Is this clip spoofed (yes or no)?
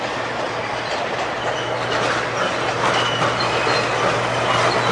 no